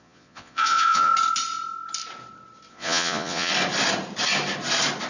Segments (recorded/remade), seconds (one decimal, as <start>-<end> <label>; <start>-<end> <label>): 0.0-1.1 remade; 1.1-2.7 recorded; 2.7-3.5 remade; 3.5-5.1 recorded